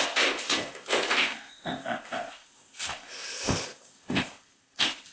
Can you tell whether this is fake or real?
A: fake